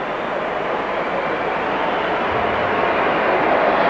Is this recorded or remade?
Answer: remade